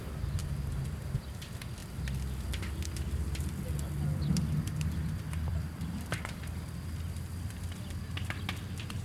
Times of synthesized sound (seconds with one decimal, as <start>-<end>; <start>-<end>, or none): 0.4-0.9; 5.5-6.4